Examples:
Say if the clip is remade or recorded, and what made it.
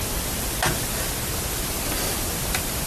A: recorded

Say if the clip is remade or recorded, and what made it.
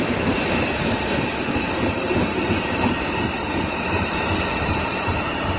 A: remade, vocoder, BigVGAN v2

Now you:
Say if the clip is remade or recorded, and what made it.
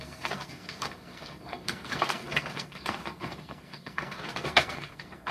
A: remade, codec, SNAC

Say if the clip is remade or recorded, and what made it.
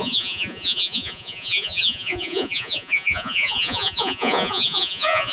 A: remade, vocoder, Vocos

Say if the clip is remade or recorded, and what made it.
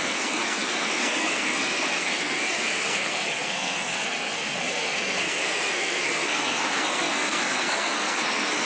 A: remade, codec, SNAC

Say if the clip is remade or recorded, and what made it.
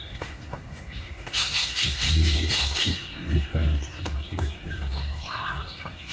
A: remade, codec, SNAC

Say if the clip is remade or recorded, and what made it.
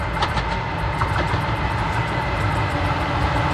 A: recorded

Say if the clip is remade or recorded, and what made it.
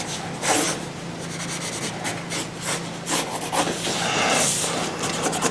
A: recorded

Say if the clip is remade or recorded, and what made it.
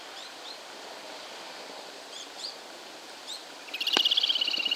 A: remade, vocoder, BigVGAN v2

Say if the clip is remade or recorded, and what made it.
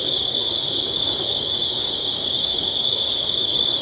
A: remade, codec, DAC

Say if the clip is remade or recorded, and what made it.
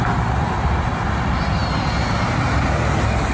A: recorded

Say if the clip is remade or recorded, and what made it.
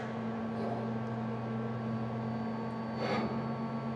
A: recorded